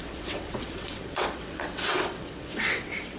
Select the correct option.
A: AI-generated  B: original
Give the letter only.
A